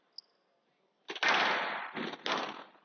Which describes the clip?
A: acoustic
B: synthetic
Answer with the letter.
A